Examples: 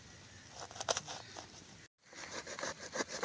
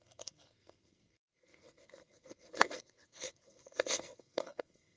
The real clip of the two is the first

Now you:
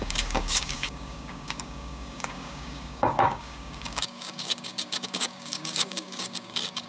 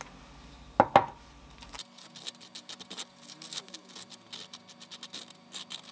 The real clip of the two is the second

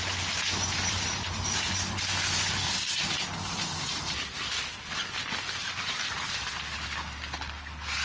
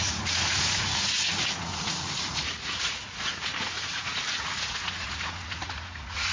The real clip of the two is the first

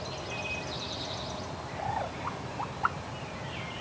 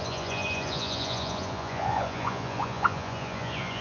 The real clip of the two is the first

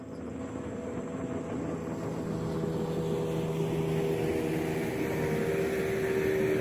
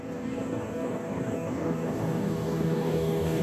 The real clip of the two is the first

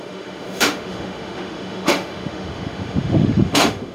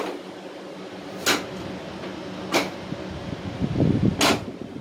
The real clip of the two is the second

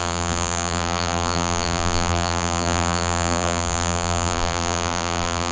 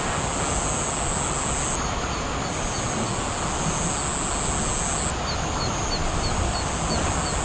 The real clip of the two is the second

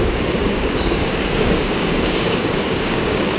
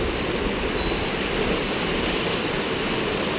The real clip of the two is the second